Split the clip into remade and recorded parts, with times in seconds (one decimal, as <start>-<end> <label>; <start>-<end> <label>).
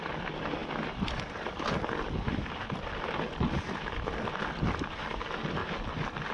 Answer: 0.0-5.6 remade; 5.6-6.3 recorded